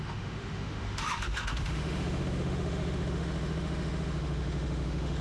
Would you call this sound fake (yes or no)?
yes